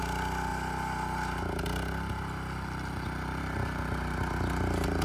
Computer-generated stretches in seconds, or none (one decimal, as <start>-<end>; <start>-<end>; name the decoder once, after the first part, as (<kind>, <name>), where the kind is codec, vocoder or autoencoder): none